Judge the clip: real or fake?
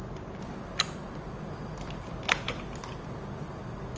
real